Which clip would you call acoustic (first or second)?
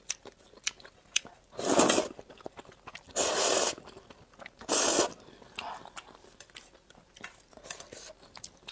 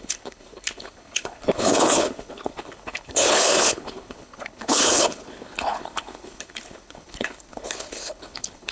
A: first